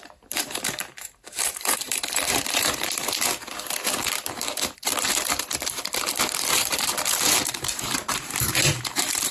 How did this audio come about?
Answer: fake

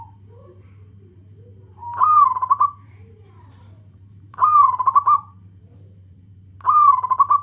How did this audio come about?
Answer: fake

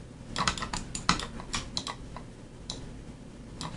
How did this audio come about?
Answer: real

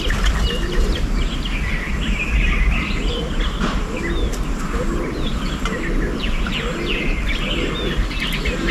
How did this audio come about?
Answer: real